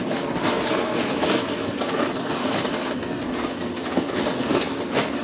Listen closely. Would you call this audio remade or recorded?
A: remade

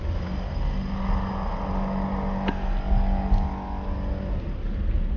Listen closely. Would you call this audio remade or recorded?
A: recorded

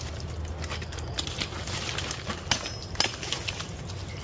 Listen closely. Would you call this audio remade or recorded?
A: recorded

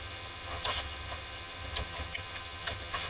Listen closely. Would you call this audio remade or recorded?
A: remade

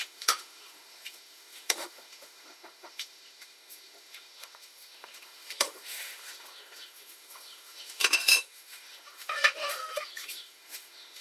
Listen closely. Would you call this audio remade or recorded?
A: remade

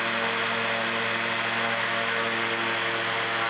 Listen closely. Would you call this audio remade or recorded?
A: recorded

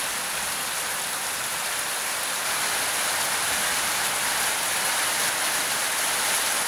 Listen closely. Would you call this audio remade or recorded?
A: recorded